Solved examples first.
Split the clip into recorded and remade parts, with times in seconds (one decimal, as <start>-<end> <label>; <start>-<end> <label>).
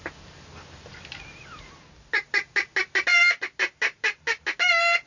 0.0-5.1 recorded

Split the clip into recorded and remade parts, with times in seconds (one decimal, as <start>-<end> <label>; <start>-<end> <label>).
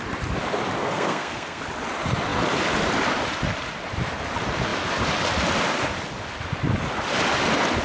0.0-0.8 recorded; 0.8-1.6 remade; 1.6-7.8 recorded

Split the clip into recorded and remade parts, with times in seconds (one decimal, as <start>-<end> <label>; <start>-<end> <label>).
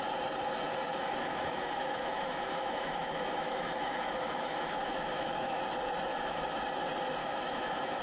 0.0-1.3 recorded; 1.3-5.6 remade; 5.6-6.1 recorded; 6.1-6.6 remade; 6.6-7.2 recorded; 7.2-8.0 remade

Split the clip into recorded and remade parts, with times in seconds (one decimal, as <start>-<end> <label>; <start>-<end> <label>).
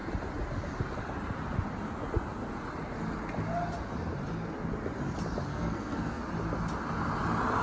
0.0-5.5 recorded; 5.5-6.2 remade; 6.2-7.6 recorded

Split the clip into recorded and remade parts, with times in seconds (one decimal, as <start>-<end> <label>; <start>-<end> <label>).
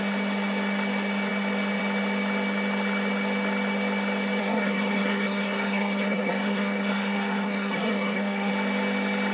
0.0-4.4 recorded; 4.4-8.5 remade; 8.5-9.3 recorded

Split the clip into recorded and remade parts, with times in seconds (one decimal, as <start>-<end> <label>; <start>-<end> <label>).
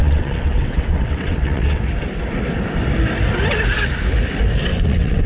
0.0-1.8 remade; 1.8-4.7 recorded; 4.7-5.3 remade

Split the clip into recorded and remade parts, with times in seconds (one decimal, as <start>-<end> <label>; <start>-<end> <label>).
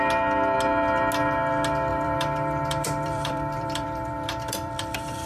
0.0-1.9 recorded; 1.9-5.3 remade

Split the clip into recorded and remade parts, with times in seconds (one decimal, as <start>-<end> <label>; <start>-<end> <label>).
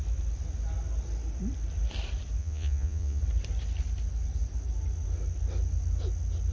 0.0-2.4 recorded; 2.4-3.2 remade; 3.2-6.5 recorded